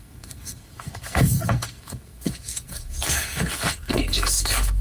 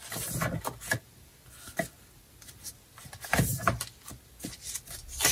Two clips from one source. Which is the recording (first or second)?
second